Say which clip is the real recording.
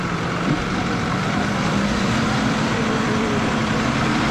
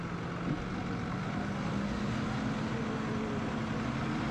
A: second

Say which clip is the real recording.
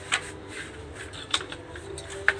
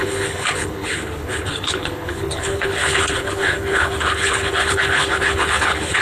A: first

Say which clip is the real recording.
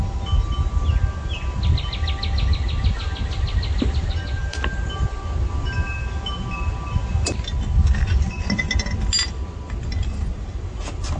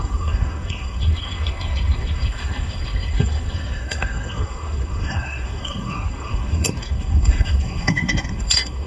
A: first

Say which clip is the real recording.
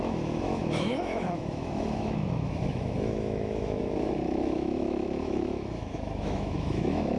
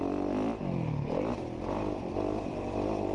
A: second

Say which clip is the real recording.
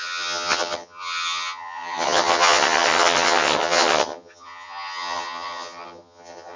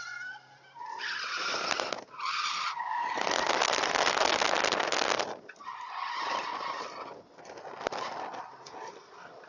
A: second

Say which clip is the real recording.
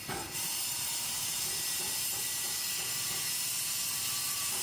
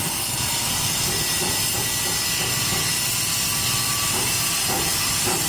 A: second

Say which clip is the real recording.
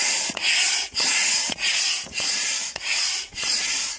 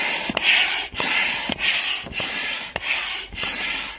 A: second